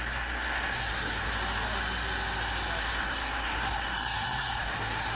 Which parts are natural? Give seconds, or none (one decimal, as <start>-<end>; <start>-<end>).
1.3-2.8